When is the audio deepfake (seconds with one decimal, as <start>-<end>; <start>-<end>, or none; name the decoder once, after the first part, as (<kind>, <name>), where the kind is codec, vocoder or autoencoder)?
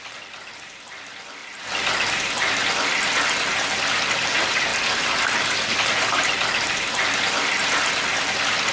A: none